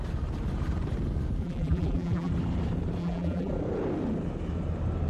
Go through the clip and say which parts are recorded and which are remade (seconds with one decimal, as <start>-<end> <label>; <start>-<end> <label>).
0.0-1.4 recorded; 1.4-2.3 remade; 2.3-3.0 recorded; 3.0-3.5 remade; 3.5-5.1 recorded